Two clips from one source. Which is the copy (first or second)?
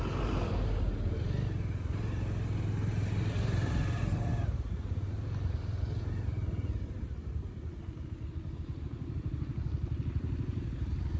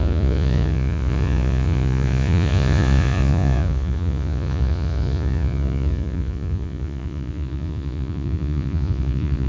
second